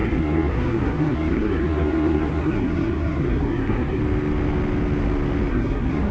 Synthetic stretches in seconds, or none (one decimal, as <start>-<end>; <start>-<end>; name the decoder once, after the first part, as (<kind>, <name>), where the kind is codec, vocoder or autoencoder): 0.0-4.0 (codec, SNAC); 5.5-6.1